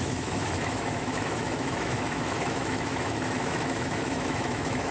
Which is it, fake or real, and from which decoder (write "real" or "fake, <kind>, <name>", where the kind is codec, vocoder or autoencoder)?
fake, autoencoder, DAC-VAE